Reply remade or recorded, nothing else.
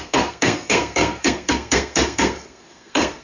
remade